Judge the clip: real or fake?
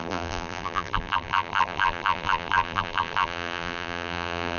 fake